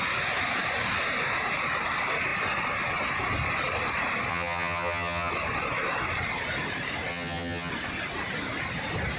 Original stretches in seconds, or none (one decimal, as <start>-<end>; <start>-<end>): 0.0-4.3; 5.3-7.1; 7.7-9.2